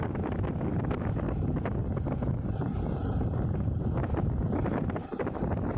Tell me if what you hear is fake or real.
real